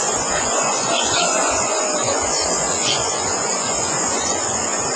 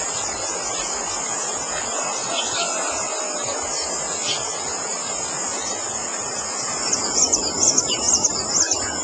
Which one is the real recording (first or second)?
second